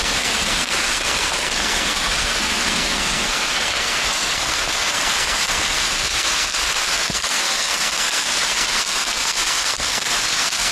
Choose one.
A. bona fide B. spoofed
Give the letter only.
B